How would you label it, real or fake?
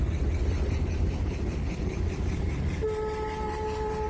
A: fake